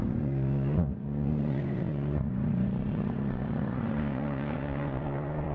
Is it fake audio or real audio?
fake